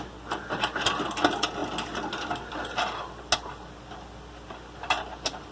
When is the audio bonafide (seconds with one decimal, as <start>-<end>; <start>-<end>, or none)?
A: 0.0-5.5